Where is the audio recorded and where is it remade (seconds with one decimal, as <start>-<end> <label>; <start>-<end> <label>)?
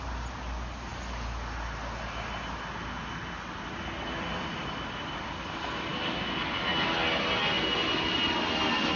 0.0-9.0 recorded